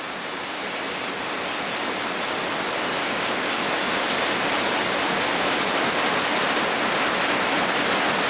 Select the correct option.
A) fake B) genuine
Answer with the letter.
B